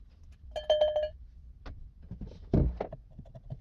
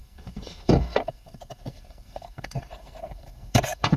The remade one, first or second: second